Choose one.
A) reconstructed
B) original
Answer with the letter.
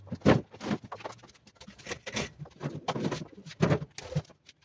B